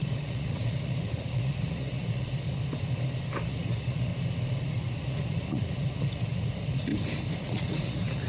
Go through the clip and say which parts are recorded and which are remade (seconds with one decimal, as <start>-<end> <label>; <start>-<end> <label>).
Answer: 0.0-2.6 remade; 2.6-3.4 recorded; 3.4-4.1 remade; 4.1-4.7 recorded; 4.7-6.9 remade; 6.9-7.4 recorded; 7.4-8.3 remade

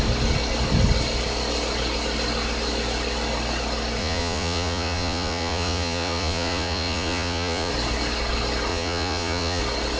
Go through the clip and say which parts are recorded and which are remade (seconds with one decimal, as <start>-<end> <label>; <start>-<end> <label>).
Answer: 0.0-4.0 recorded; 4.0-7.7 remade; 7.7-8.7 recorded; 8.7-9.6 remade; 9.6-10.0 recorded

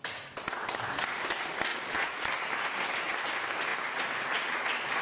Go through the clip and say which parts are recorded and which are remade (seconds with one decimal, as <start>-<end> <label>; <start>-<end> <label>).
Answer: 0.0-1.7 recorded; 1.7-2.3 remade; 2.3-5.0 recorded

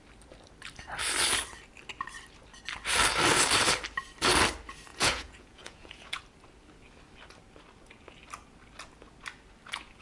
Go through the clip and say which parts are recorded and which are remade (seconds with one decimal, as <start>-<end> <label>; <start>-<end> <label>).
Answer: 0.0-4.9 recorded; 4.9-6.2 remade; 6.2-10.0 recorded

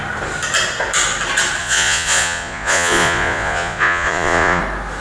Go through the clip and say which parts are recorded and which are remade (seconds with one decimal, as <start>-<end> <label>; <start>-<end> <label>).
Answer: 0.0-1.6 recorded; 1.6-4.6 remade; 4.6-5.0 recorded

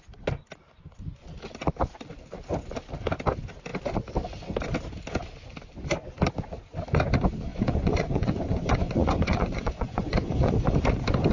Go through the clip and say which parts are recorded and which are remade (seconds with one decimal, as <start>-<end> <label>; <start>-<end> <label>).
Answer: 0.0-7.5 recorded; 7.5-10.7 remade; 10.7-11.3 recorded